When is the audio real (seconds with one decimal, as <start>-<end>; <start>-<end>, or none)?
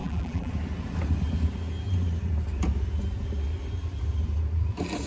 0.5-5.1